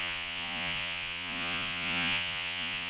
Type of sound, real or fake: fake